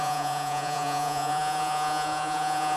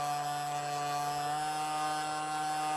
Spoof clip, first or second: first